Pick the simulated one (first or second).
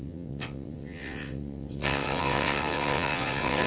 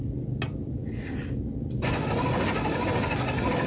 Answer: first